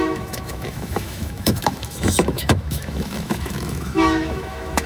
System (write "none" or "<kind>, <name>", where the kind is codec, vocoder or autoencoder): autoencoder, DAC-VAE